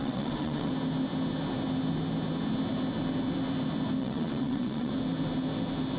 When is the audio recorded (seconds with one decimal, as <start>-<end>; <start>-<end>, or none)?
0.7-4.0; 4.9-6.0